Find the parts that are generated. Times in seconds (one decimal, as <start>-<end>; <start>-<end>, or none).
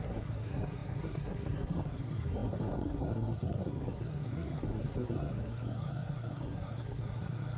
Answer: 0.0-7.6